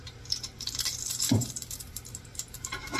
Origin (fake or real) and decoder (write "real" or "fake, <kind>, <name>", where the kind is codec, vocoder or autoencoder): fake, vocoder, BigVGAN v2